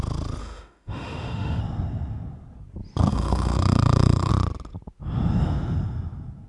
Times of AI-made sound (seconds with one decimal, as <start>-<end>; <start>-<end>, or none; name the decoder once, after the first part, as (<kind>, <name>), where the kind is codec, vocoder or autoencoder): 0.4-1.6 (autoencoder, DAC-VAE); 3.1-4.3